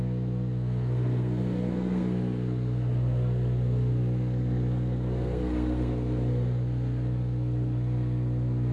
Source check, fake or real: fake